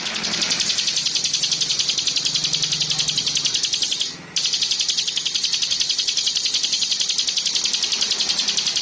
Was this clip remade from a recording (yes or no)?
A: no